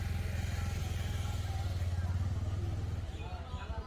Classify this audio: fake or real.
real